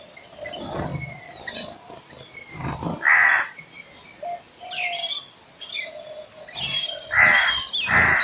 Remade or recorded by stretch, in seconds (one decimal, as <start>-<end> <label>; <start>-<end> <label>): 0.0-8.2 recorded